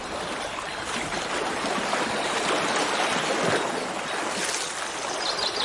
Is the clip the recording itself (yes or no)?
yes